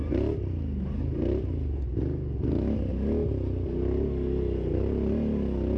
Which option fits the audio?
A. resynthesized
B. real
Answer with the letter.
B